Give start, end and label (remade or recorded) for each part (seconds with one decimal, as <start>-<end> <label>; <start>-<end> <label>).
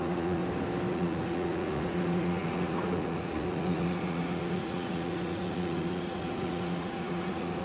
0.0-0.4 remade; 0.4-0.9 recorded; 0.9-7.6 remade